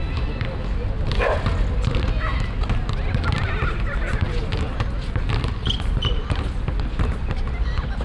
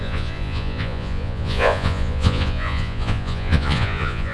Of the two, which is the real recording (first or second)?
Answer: first